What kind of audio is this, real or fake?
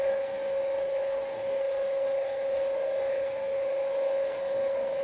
fake